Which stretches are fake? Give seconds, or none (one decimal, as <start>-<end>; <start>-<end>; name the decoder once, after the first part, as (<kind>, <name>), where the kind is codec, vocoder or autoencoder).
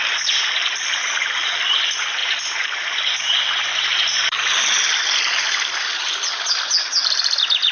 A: none